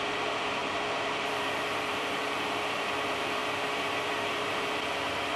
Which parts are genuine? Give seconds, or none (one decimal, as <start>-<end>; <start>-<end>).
none